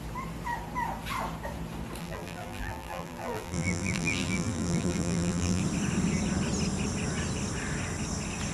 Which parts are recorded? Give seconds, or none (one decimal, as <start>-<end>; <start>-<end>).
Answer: 0.0-2.0; 5.6-8.5